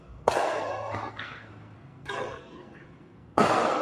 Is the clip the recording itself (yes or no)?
no